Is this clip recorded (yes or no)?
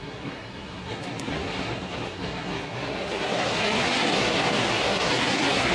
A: no